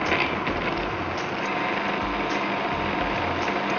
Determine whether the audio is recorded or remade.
recorded